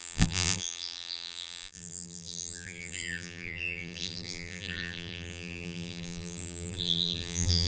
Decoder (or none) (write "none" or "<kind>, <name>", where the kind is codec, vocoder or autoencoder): vocoder, BigVGAN v2